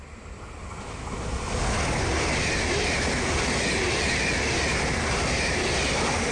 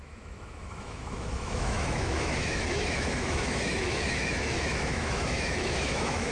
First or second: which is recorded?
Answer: first